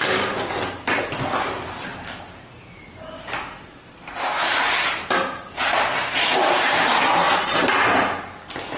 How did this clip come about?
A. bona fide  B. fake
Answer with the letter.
A